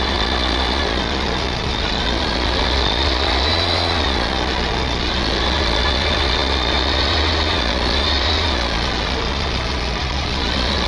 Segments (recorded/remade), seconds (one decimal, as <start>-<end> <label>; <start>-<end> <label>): 0.0-10.9 remade